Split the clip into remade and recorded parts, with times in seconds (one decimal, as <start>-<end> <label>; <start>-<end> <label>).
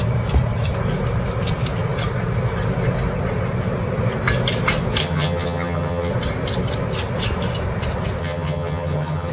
0.0-5.0 recorded; 5.0-6.1 remade; 6.1-8.2 recorded; 8.2-9.3 remade